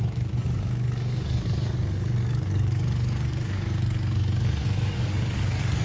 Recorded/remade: remade